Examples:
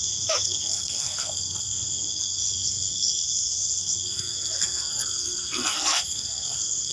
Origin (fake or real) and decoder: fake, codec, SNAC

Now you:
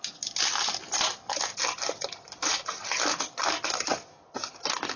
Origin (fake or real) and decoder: real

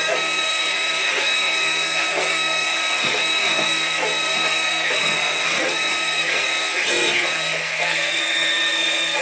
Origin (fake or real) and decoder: fake, codec, SNAC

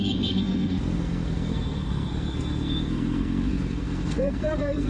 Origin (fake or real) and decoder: fake, codec, SNAC